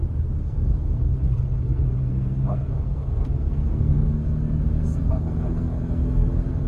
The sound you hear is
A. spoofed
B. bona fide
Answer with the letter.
A